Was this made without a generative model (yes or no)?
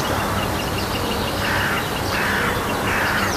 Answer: no